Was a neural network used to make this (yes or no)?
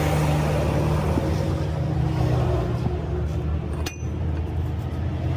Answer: no